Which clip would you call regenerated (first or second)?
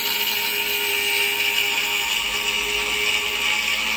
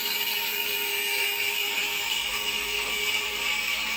second